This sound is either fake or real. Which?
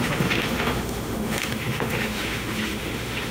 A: fake